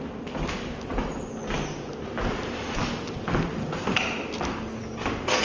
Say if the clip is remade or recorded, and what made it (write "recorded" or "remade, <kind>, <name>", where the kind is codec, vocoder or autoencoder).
recorded